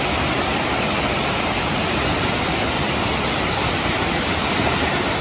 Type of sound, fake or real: real